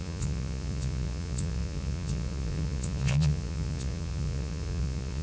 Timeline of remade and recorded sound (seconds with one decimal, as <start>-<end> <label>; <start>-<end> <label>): 0.0-5.2 remade